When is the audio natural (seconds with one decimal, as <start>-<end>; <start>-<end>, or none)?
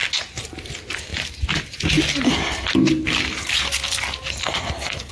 0.0-4.4